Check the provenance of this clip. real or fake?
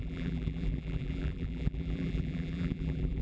fake